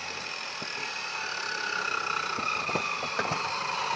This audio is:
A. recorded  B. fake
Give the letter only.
A